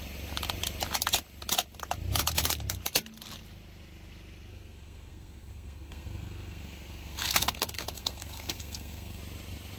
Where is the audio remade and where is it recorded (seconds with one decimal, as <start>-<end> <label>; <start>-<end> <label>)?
0.0-4.5 recorded; 4.5-9.2 remade; 9.2-9.8 recorded